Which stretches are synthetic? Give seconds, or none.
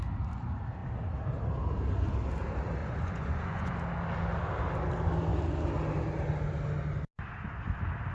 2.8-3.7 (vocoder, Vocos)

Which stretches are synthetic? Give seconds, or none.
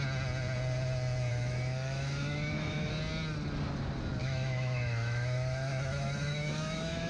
1.3-2.9 (autoencoder, DAC-VAE); 4.2-7.1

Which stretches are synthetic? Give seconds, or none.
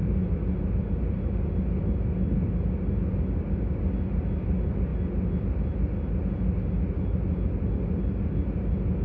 none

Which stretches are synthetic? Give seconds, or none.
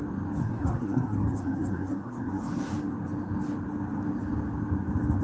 0.4-2.7 (codec, SNAC)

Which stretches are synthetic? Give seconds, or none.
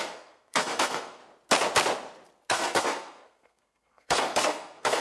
0.0-1.2 (codec, SNAC); 2.5-5.0